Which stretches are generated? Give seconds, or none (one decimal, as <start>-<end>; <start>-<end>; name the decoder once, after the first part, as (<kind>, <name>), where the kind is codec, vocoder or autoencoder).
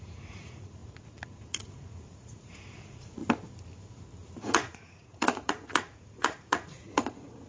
0.0-3.2 (vocoder, Vocos); 4.4-7.5